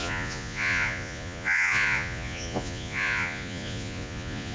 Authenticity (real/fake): fake